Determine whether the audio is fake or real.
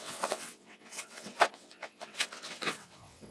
fake